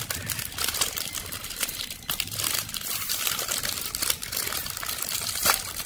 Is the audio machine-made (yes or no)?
no